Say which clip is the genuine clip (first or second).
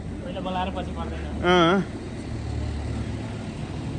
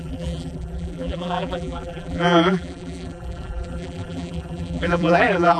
first